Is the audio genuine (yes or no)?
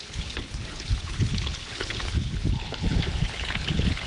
no